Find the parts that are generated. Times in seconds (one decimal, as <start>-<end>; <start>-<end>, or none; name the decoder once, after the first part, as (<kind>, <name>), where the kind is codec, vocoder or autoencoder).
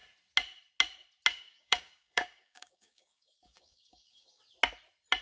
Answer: 1.3-4.4 (codec, DAC)